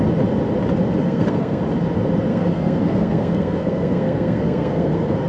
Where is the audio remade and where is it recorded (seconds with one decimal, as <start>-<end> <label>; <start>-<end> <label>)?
0.0-1.0 recorded; 1.0-1.6 remade; 1.6-2.3 recorded; 2.3-5.3 remade